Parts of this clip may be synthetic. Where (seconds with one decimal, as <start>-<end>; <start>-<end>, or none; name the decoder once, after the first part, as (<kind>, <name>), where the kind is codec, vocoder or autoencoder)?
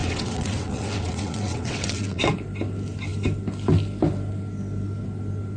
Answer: 0.0-2.2 (vocoder, WaveNeXt)